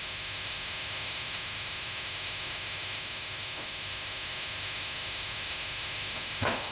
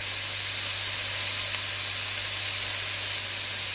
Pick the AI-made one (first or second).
first